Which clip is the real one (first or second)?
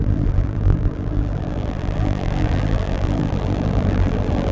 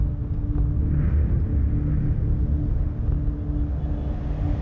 second